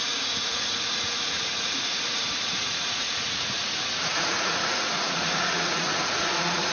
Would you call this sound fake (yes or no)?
yes